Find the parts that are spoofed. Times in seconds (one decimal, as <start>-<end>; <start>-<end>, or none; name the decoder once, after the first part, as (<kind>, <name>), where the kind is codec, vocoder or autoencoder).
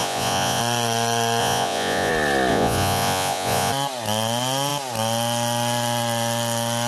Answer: 0.0-0.6 (vocoder, Vocos); 1.4-2.1; 2.5-3.7